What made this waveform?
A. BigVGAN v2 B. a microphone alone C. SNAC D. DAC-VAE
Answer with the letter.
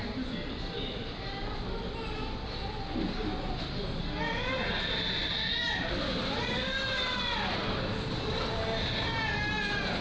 B